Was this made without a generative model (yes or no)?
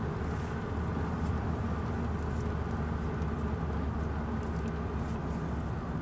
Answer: yes